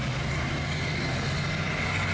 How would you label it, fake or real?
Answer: real